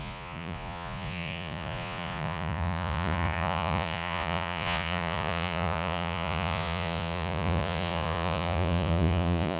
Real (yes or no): no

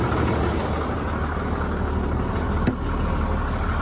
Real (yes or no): yes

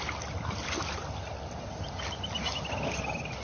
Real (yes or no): yes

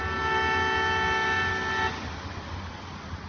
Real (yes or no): yes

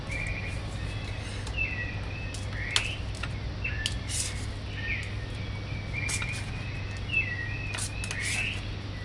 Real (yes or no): yes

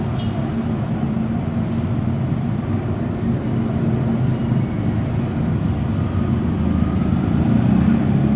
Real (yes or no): yes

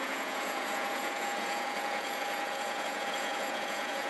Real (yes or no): no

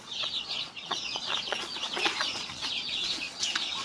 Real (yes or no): no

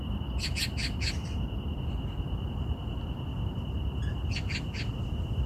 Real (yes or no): yes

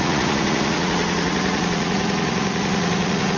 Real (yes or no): no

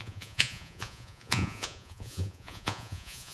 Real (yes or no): no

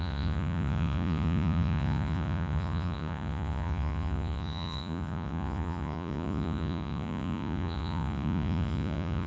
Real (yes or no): no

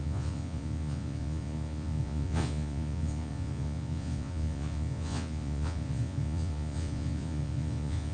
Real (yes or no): no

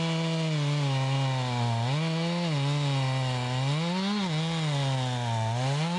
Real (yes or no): yes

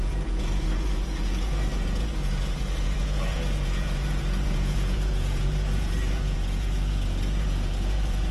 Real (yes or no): no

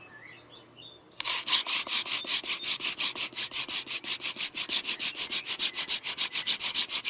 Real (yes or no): yes